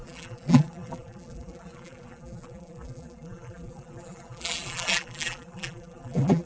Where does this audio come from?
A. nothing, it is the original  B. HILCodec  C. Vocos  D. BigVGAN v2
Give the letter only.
D